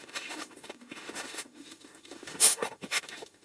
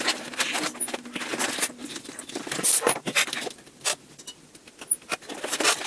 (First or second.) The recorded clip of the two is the second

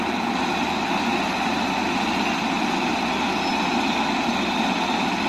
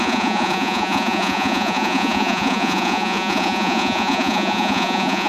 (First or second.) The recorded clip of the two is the first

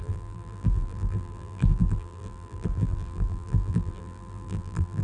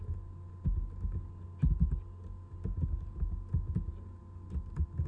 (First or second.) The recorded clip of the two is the second